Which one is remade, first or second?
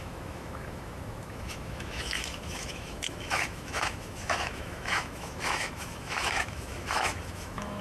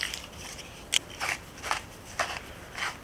first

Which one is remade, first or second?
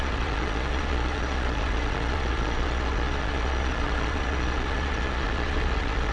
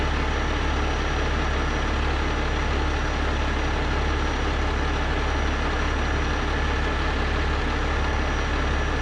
first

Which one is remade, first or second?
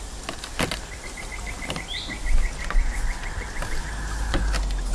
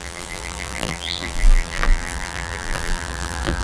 second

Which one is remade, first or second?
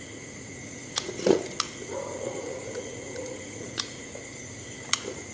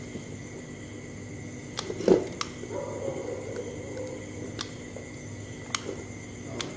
first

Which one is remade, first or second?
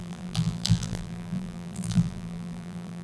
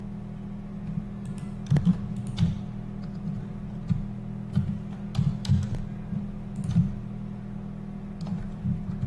first